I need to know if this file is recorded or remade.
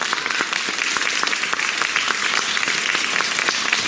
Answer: recorded